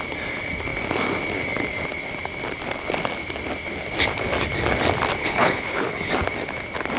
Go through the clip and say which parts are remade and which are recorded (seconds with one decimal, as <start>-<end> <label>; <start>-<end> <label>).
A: 0.0-5.2 recorded; 5.2-6.1 remade; 6.1-7.0 recorded